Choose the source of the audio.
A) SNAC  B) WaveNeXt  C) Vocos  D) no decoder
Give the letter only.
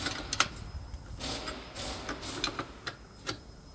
D